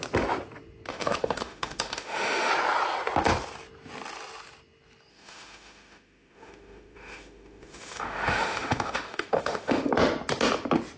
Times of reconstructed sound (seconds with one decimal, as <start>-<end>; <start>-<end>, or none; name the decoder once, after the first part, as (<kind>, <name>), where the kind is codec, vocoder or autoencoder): 0.9-2.5 (autoencoder, DAC-VAE); 5.1-9.9